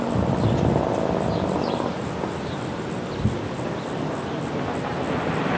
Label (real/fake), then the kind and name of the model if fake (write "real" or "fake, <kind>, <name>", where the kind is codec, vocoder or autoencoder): real